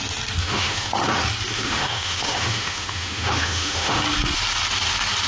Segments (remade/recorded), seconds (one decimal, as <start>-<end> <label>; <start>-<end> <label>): 0.0-0.4 recorded; 0.4-0.9 remade; 0.9-1.5 recorded; 1.5-4.0 remade; 4.0-5.3 recorded

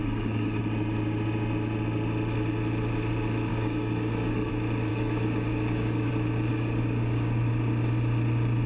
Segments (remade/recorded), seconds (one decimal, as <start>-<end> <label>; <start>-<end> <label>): 0.0-0.6 remade; 0.6-3.5 recorded; 3.5-4.5 remade; 4.5-4.9 recorded; 4.9-6.1 remade; 6.1-6.5 recorded; 6.5-7.5 remade; 7.5-8.7 recorded

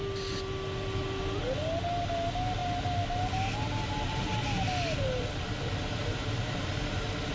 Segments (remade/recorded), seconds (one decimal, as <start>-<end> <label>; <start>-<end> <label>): 0.0-7.3 recorded

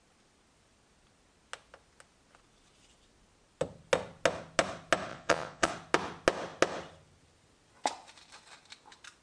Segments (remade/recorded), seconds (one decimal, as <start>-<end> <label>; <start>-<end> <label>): 0.0-5.1 recorded; 5.1-5.7 remade; 5.7-9.2 recorded

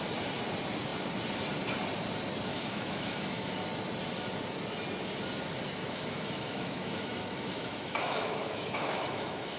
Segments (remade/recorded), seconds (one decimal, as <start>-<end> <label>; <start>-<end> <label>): 0.0-2.5 recorded; 2.5-3.5 remade; 3.5-5.8 recorded; 5.8-9.6 remade

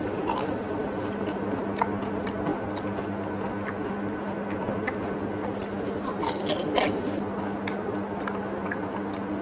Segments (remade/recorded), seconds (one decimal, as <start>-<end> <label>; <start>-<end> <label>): 0.0-9.4 recorded

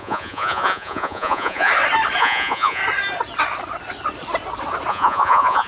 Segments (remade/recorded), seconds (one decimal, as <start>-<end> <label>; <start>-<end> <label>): 0.0-1.7 remade; 1.7-2.2 recorded; 2.2-2.8 remade; 2.8-4.9 recorded; 4.9-5.7 remade